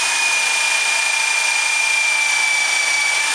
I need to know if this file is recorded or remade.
recorded